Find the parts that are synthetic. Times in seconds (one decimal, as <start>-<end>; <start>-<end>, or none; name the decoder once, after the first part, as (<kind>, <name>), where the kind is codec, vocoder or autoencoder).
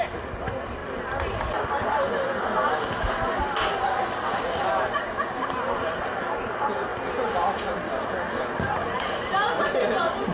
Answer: none